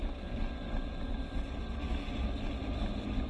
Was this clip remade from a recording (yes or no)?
no